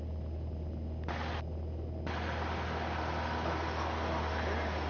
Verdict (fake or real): real